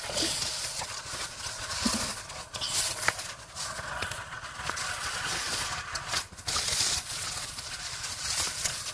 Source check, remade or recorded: remade